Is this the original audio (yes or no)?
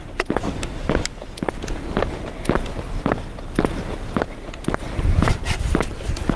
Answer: no